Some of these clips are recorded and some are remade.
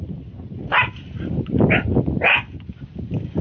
recorded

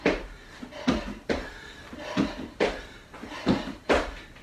recorded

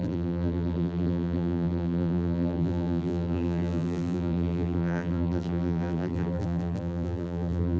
remade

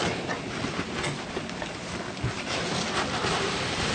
recorded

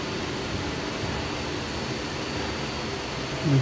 recorded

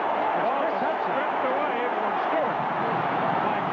remade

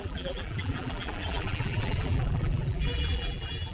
remade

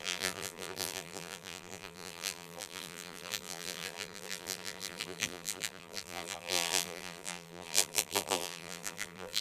remade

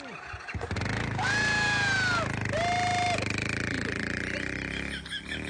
recorded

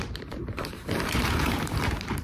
remade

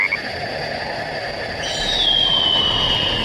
recorded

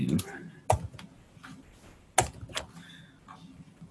recorded